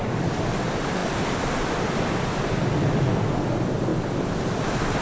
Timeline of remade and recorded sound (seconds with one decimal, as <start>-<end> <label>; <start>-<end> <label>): 0.0-1.0 remade; 1.0-1.8 recorded; 1.8-3.9 remade; 3.9-4.6 recorded; 4.6-5.0 remade